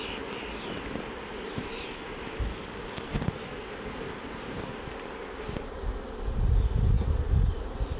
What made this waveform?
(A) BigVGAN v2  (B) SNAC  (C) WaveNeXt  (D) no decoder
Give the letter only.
D